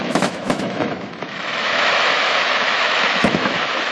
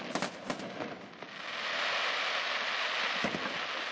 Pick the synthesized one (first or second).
first